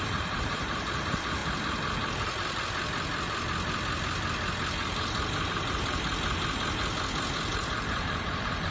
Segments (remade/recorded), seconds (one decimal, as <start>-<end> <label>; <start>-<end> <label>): 0.0-1.4 remade; 1.4-5.5 recorded; 5.5-6.1 remade; 6.1-7.5 recorded; 7.5-8.7 remade